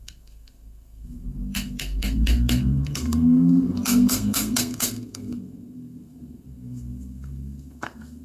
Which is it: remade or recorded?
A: remade